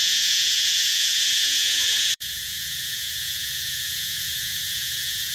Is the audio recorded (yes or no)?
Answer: no